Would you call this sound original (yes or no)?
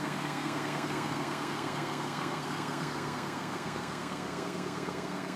no